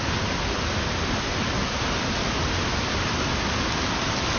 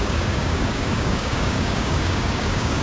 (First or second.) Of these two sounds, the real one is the first